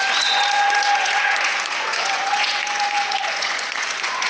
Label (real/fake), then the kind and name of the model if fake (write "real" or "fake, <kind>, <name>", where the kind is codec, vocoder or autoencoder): fake, vocoder, Vocos